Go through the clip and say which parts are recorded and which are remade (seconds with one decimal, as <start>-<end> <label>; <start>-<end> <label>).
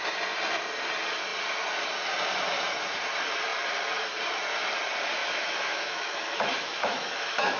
0.0-5.2 recorded; 5.2-7.6 remade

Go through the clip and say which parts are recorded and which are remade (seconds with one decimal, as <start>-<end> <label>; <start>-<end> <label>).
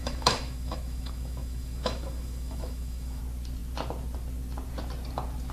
0.0-3.2 remade; 3.2-5.5 recorded